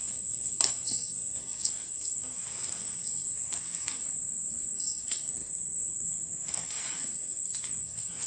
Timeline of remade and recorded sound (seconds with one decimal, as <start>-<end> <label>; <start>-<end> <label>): 0.0-4.0 remade; 4.0-4.7 recorded; 4.7-8.3 remade